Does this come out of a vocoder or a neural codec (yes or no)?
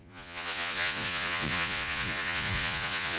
yes